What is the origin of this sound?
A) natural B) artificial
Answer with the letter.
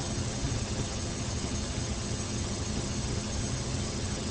B